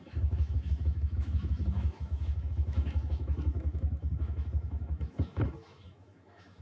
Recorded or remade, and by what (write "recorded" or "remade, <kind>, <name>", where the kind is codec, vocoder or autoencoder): remade, autoencoder, DAC-VAE